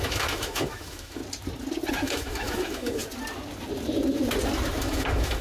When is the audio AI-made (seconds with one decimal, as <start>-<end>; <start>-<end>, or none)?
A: 0.0-1.2; 1.9-3.0; 4.8-5.4